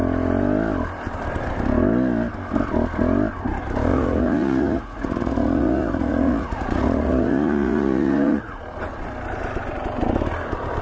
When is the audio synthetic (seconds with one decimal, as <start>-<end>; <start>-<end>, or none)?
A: 3.9-8.6